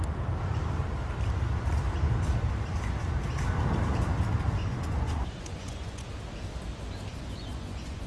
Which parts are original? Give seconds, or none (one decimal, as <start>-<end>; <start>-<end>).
0.0-4.6; 6.1-7.1